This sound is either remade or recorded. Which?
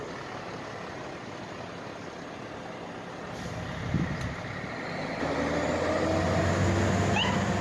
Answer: recorded